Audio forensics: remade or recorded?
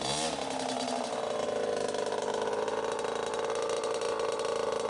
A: recorded